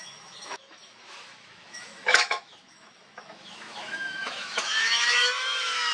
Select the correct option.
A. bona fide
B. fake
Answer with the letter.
B